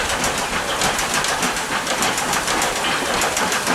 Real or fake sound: real